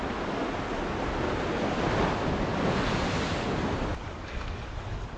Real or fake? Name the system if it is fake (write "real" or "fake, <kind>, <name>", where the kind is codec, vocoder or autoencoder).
real